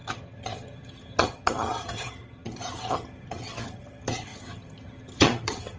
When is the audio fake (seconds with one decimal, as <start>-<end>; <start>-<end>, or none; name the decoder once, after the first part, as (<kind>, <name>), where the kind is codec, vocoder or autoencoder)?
0.0-5.8 (vocoder, HiFi-GAN)